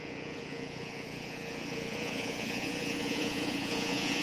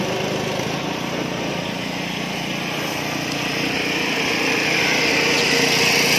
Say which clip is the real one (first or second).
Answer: second